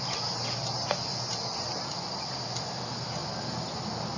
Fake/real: real